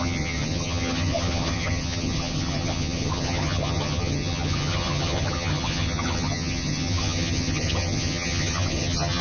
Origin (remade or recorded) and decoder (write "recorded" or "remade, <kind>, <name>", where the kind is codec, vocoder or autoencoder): remade, vocoder, HiFi-GAN